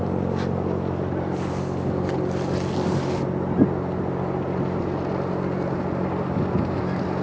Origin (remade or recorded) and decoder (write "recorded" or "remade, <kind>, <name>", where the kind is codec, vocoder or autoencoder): recorded